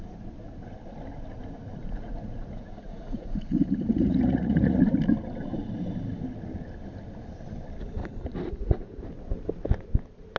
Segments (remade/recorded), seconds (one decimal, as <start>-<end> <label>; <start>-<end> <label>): 0.0-1.8 recorded; 1.8-4.8 remade; 4.8-8.0 recorded; 8.0-9.0 remade; 9.0-10.4 recorded